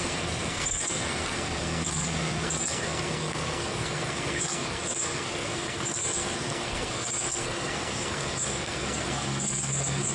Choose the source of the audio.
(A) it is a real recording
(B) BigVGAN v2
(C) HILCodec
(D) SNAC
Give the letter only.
D